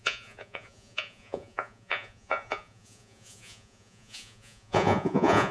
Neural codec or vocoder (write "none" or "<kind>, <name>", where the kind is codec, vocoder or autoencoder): vocoder, Vocos